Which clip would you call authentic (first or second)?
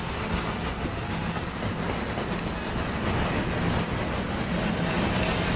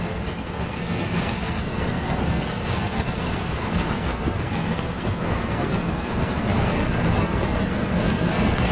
first